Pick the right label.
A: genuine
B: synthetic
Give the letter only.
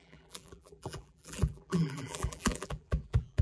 B